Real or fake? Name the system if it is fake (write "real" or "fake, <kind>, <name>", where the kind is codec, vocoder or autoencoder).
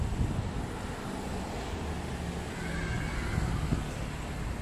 real